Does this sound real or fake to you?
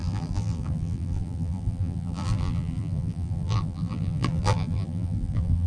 fake